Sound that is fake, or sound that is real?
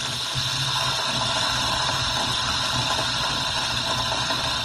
real